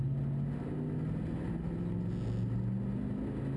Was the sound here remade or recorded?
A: recorded